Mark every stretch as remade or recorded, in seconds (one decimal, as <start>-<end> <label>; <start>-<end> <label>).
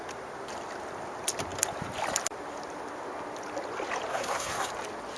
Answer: 0.0-4.1 recorded; 4.1-4.7 remade; 4.7-5.2 recorded